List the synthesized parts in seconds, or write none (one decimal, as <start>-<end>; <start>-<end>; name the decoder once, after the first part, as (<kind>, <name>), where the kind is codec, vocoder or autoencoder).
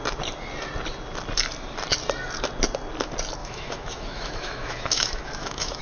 3.4-5.8 (autoencoder, DAC-VAE)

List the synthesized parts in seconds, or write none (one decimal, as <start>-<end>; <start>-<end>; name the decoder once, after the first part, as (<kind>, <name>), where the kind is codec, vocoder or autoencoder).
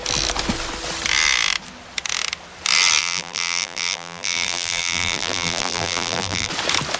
3.0-6.5 (vocoder, BigVGAN v2)